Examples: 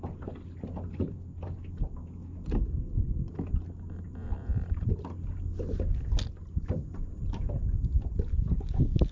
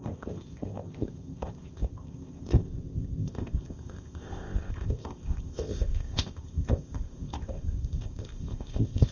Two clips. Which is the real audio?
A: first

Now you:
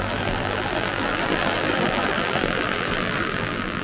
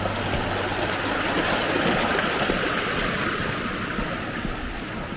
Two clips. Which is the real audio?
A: second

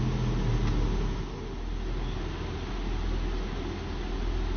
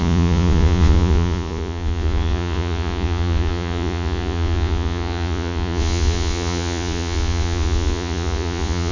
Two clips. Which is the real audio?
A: first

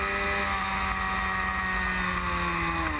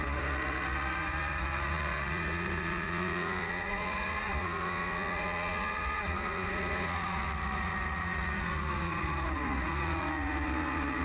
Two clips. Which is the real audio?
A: first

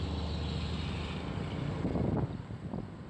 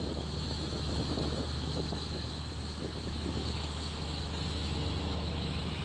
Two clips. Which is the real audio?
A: first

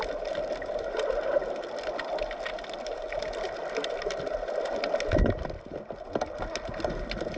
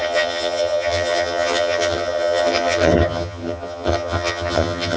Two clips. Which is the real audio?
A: first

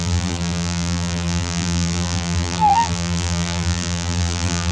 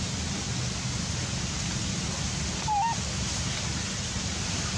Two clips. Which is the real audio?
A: second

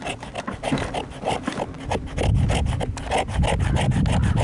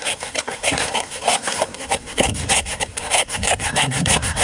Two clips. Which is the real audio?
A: first